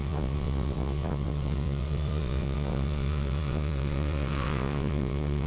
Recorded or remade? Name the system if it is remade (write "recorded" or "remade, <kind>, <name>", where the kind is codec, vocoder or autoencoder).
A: remade, vocoder, WaveNeXt